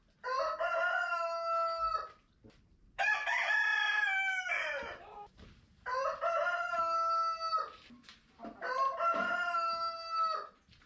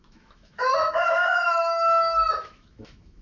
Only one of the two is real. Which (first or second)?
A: first